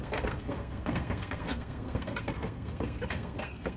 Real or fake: fake